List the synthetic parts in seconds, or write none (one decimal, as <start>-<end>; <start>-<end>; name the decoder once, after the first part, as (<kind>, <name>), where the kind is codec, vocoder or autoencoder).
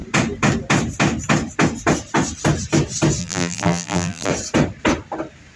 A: 3.2-4.3 (vocoder, BigVGAN v2)